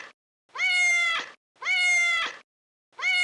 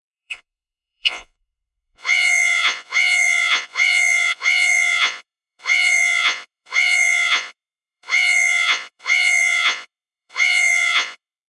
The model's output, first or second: second